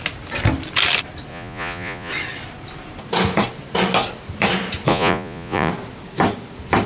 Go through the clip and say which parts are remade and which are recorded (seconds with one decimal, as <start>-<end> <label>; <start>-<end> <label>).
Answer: 0.0-1.3 recorded; 1.3-2.1 remade; 2.1-4.9 recorded; 4.9-5.7 remade; 5.7-6.9 recorded